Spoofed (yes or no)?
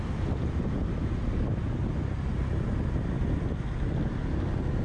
no